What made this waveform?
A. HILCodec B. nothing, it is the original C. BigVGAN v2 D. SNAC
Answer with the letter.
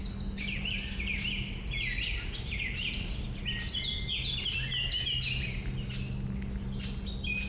B